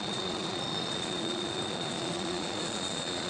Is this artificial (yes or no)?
yes